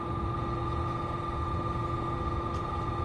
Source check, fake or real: real